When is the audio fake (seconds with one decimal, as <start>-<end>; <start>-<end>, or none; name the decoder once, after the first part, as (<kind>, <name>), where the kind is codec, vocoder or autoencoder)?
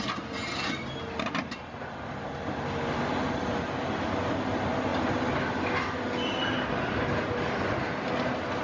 none